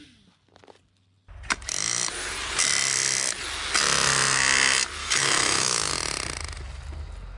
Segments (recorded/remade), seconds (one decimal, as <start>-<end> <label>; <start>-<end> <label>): 0.0-5.0 recorded; 5.0-5.9 remade; 5.9-7.4 recorded